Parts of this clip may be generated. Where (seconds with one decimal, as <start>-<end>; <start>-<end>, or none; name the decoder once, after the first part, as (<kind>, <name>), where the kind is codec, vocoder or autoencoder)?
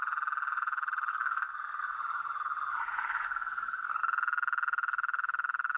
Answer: 1.1-4.0 (codec, SNAC)